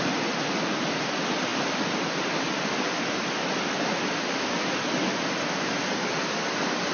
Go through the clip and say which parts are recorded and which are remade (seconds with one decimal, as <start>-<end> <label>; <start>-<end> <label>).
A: 0.0-6.9 recorded